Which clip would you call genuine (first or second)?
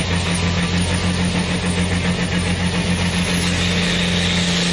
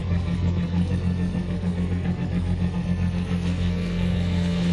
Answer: first